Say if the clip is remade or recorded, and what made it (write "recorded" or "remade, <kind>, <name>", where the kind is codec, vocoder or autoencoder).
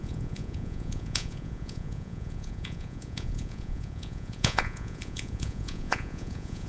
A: remade, vocoder, Vocos